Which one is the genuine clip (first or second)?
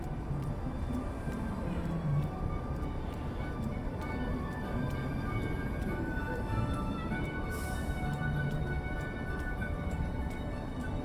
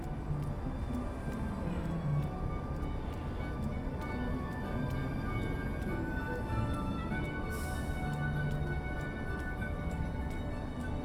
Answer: second